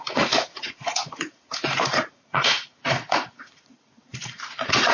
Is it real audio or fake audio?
fake